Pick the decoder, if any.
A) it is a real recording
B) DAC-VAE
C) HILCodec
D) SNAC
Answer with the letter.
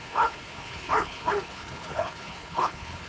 C